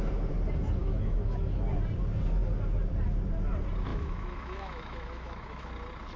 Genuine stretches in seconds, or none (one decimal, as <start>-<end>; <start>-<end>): 0.0-0.8; 1.6-3.9; 5.7-6.2